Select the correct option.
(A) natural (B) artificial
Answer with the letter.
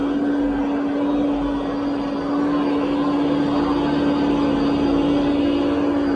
A